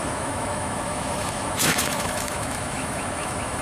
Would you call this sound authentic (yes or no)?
no